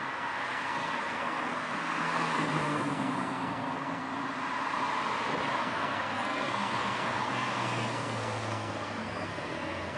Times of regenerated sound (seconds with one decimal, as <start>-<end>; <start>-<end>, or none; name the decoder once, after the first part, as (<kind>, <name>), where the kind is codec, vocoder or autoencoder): 0.0-4.1 (codec, SNAC); 5.6-10.0